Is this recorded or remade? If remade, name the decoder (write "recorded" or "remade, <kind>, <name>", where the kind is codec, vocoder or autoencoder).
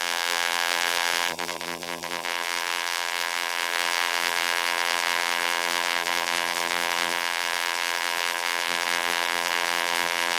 remade, vocoder, BigVGAN v2